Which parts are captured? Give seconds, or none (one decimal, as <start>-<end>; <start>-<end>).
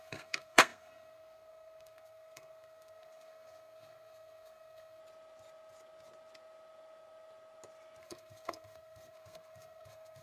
5.0-8.0